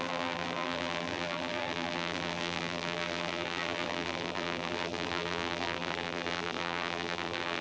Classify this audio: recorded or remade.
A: remade